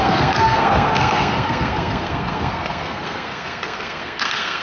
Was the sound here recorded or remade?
remade